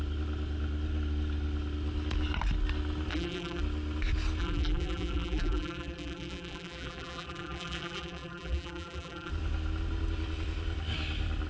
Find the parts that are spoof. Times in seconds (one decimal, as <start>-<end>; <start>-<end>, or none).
3.1-3.6; 4.4-9.3